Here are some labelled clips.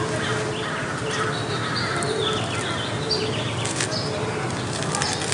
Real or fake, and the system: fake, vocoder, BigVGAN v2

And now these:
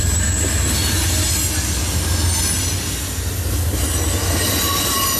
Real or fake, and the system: real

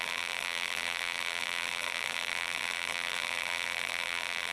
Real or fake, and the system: fake, vocoder, BigVGAN v2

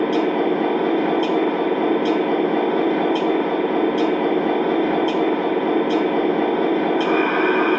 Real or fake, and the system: real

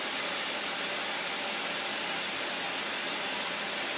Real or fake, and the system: real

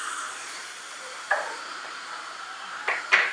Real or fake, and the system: fake, vocoder, BigVGAN v2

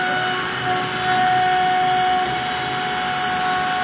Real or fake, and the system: real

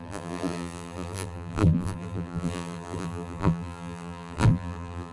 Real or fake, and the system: fake, vocoder, BigVGAN v2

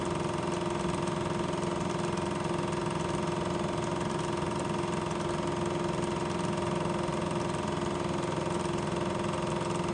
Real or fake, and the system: real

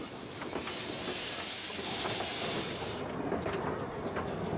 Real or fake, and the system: real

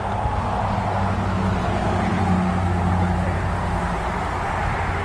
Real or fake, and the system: real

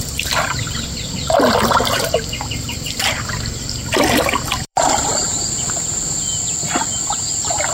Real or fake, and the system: fake, vocoder, BigVGAN v2